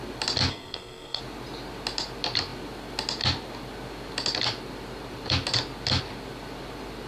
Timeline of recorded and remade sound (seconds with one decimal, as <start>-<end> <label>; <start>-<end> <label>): 0.0-0.5 recorded; 0.5-1.2 remade; 1.2-7.1 recorded